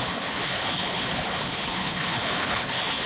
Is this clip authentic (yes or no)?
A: no